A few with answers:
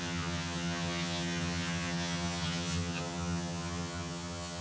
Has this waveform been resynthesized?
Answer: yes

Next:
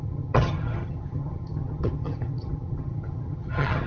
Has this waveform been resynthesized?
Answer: yes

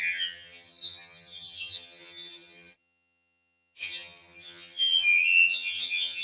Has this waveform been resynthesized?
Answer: yes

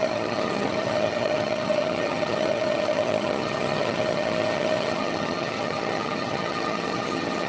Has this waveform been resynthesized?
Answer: yes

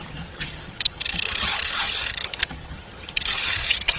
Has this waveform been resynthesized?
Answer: yes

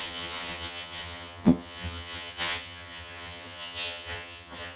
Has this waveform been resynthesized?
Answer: yes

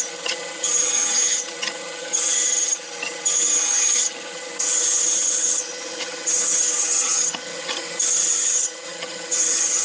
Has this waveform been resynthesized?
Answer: yes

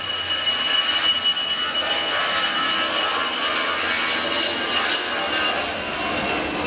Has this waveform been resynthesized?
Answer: no